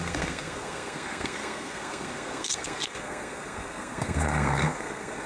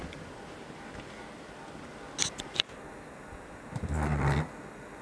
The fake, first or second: first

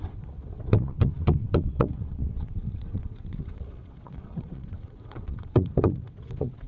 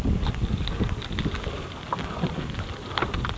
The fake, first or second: first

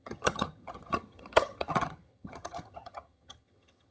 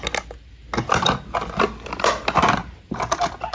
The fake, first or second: first